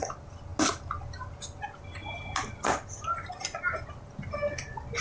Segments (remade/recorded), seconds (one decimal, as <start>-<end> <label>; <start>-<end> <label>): 0.0-5.0 recorded